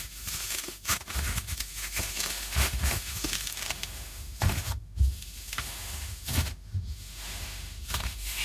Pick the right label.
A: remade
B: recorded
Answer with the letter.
A